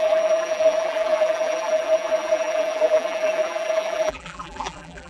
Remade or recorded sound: remade